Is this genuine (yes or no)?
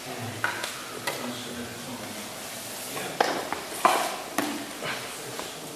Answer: yes